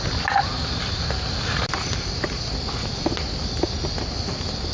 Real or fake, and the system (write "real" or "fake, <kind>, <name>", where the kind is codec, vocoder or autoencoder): real